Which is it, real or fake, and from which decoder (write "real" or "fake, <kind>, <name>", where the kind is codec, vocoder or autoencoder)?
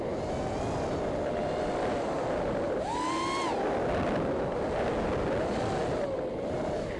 real